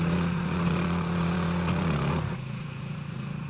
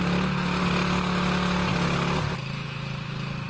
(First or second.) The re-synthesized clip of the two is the first